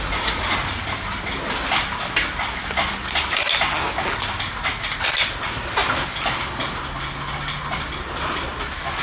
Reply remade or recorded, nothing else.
recorded